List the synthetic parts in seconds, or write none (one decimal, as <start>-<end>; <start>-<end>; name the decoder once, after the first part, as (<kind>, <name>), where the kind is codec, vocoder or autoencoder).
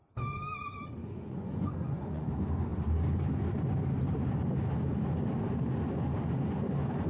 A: 1.0-2.3 (vocoder, Vocos)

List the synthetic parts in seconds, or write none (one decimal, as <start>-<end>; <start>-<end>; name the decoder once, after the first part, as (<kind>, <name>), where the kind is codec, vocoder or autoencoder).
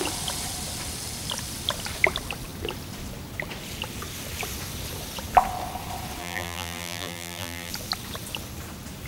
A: 6.2-7.7 (vocoder, BigVGAN v2)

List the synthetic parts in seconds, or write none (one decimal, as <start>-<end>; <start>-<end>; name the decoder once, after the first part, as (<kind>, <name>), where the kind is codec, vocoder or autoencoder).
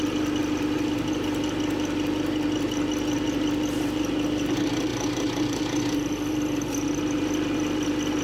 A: none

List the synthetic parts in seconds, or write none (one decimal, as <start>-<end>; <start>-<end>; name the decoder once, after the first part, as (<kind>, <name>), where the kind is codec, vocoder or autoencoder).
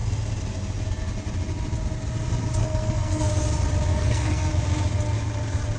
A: 2.6-3.3 (codec, SNAC); 3.9-4.5